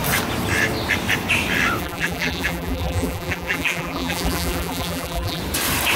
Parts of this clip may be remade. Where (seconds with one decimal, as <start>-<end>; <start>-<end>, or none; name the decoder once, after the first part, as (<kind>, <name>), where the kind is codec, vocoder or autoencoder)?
1.8-5.4 (vocoder, BigVGAN v2)